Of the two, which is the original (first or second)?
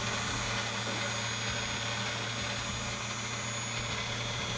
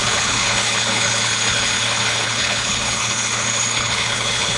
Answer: first